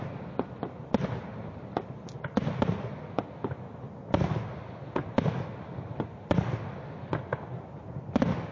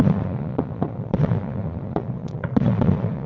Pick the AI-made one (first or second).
second